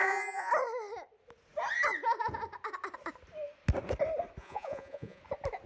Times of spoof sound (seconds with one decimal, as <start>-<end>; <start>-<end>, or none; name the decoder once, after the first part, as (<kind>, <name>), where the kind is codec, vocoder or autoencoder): 0.0-0.5 (vocoder, Vocos); 4.4-5.2